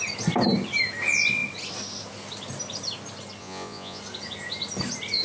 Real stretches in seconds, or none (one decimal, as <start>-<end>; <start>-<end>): 0.0-3.4; 4.0-5.2